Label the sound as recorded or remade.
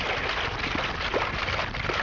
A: recorded